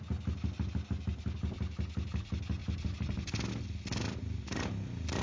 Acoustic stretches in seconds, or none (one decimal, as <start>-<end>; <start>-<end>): 0.0-5.2